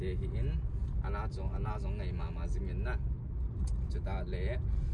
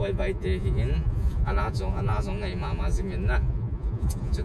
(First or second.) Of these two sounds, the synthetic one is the second